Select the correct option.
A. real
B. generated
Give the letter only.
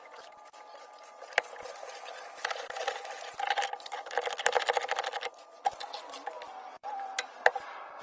A